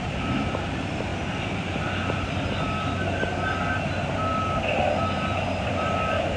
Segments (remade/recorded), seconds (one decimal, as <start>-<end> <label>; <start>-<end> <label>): 0.0-1.1 recorded; 1.1-2.5 remade; 2.5-4.3 recorded; 4.3-6.4 remade

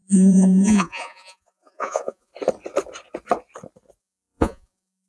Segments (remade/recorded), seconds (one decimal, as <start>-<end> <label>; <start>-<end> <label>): 0.0-2.3 remade; 2.3-4.0 recorded; 4.0-5.1 remade

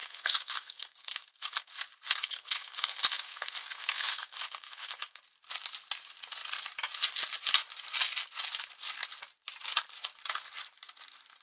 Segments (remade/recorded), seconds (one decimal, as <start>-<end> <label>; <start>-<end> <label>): 0.0-5.2 remade; 5.2-11.4 recorded

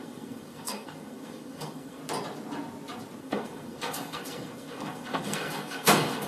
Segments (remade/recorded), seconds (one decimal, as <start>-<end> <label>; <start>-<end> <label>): 0.0-2.0 remade; 2.0-3.2 recorded; 3.2-6.3 remade

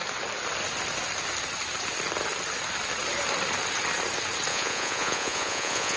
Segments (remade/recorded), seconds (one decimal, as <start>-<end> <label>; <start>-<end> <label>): 0.0-4.5 recorded; 4.5-6.0 remade

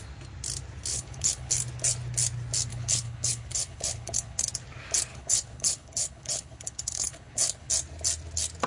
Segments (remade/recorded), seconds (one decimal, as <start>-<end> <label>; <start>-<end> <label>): 0.0-0.9 recorded; 0.9-1.5 remade; 1.5-2.7 recorded; 2.7-4.5 remade; 4.5-5.1 recorded; 5.1-7.7 remade; 7.7-8.7 recorded

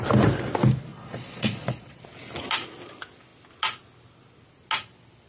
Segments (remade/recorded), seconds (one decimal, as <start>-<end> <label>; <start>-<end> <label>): 0.0-0.9 recorded; 0.9-2.0 remade; 2.0-5.3 recorded

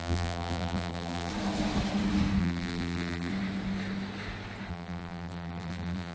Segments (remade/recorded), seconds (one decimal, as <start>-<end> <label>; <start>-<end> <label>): 0.0-1.3 remade; 1.3-2.4 recorded; 2.4-3.3 remade; 3.3-4.7 recorded; 4.7-6.1 remade